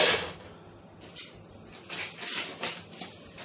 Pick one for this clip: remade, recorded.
recorded